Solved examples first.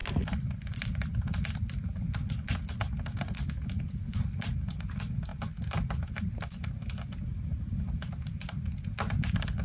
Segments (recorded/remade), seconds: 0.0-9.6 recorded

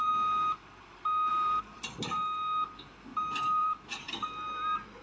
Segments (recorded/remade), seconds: 0.0-1.3 recorded; 1.3-1.9 remade; 1.9-3.6 recorded; 3.6-4.1 remade; 4.1-5.0 recorded

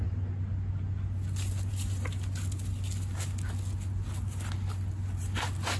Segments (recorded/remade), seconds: 0.0-5.8 recorded

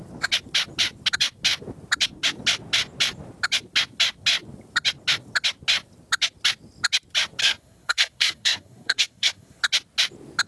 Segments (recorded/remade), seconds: 0.0-7.4 recorded; 7.4-9.6 remade; 9.6-10.5 recorded

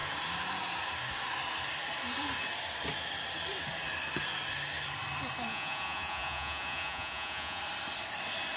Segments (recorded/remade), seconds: 0.0-5.5 recorded; 5.5-7.6 remade; 7.6-8.6 recorded